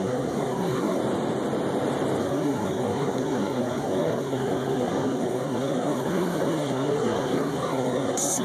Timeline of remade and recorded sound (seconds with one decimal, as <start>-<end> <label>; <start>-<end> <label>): 0.0-1.0 remade; 1.0-2.2 recorded; 2.2-8.4 remade